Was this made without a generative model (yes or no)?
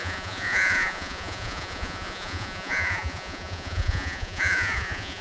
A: no